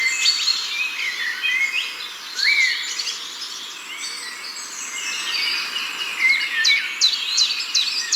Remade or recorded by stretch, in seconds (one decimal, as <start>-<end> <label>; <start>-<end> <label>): 0.0-8.2 recorded